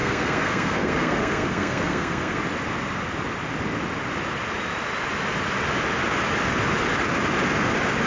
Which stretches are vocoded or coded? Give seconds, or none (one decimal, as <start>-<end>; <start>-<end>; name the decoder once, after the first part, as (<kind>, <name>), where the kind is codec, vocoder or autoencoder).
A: 0.0-2.4 (codec, SNAC)